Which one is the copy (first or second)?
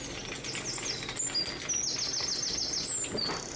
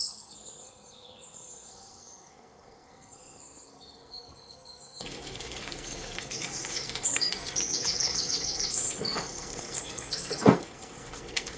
second